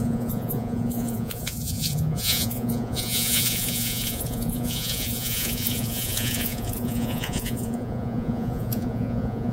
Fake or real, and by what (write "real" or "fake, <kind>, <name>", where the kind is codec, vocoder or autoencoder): fake, vocoder, Vocos